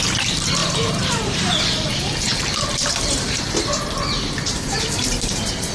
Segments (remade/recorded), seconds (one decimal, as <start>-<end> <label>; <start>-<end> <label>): 0.0-0.6 recorded; 0.6-1.9 remade; 1.9-2.3 recorded; 2.3-5.7 remade